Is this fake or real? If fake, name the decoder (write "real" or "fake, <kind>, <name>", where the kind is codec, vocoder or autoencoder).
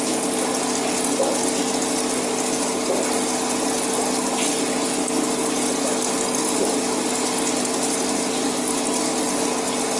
real